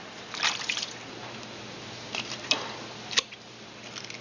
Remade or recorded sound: recorded